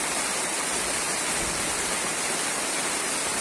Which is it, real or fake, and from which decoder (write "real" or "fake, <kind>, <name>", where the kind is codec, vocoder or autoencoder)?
real